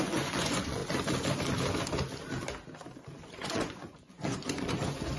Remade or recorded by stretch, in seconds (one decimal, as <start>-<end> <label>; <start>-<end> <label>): 0.0-0.8 remade; 0.8-3.3 recorded; 3.3-5.2 remade